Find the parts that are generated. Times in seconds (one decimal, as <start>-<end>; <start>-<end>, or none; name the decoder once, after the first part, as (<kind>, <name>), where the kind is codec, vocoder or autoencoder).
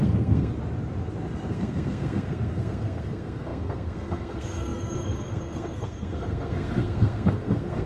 0.0-0.5 (codec, SNAC); 1.5-7.9